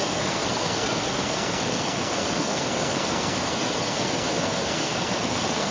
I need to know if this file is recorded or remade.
remade